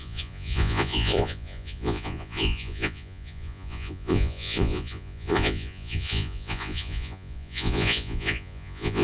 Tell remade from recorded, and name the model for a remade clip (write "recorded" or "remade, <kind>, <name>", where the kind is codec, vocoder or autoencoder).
remade, vocoder, Vocos